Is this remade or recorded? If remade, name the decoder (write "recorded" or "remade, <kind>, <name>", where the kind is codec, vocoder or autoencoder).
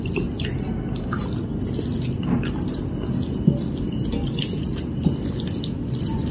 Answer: recorded